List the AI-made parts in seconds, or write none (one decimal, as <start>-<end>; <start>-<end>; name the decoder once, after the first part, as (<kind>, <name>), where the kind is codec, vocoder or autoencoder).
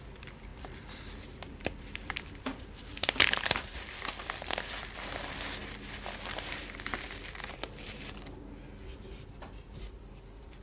0.0-5.6 (vocoder, BigVGAN v2); 6.3-10.6